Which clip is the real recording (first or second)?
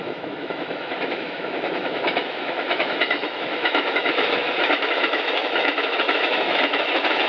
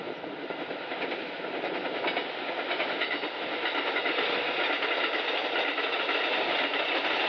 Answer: second